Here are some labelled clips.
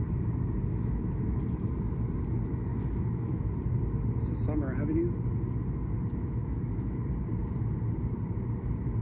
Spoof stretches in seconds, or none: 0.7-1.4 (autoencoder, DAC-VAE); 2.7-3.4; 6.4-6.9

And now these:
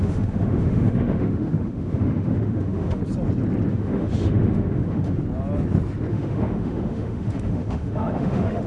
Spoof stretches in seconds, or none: 0.0-3.0 (autoencoder, DAC-VAE); 3.7-5.2; 6.1-8.7